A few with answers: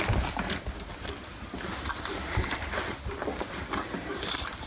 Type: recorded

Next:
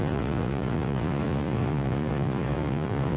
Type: remade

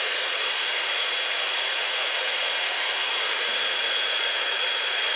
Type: remade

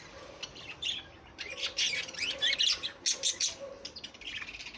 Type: recorded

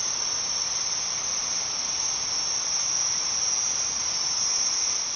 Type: recorded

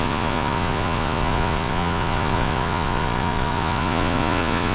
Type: remade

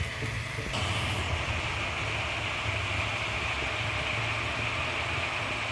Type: recorded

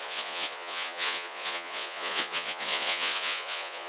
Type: remade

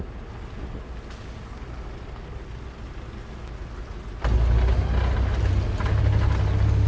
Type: recorded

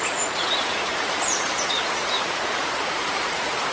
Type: remade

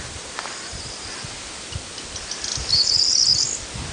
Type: recorded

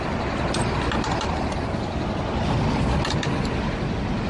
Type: recorded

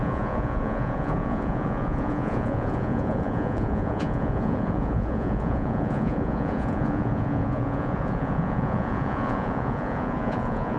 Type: remade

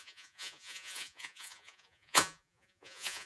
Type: remade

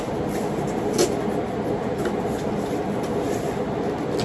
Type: recorded